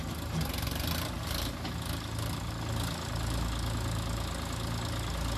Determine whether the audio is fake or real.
real